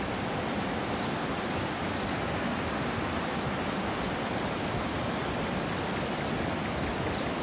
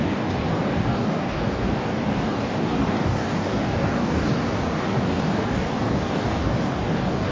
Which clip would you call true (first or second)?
first